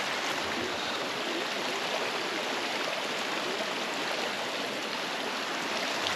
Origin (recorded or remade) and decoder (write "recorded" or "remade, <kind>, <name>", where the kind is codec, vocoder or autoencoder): recorded